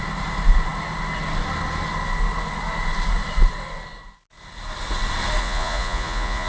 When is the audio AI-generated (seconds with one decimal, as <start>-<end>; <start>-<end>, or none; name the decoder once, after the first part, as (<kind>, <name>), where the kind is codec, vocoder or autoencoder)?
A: 5.4-6.5 (vocoder, Vocos)